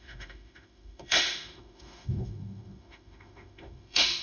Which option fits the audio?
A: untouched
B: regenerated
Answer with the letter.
B